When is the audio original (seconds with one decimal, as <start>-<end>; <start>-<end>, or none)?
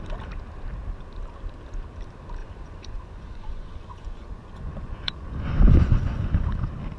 0.0-2.4; 6.6-7.0